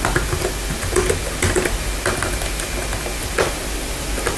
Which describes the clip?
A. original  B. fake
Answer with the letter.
A